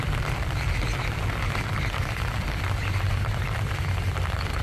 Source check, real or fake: real